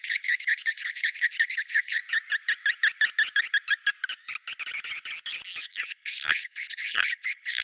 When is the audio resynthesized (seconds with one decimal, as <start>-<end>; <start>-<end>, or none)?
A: 0.0-2.0; 5.6-7.6